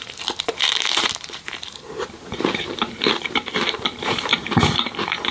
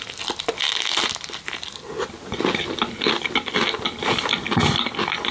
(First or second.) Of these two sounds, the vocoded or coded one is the first